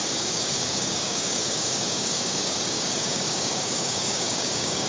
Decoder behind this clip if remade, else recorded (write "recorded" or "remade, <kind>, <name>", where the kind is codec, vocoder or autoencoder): remade, codec, DAC